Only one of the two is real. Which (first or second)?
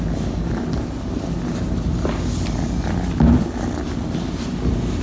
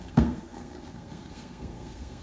first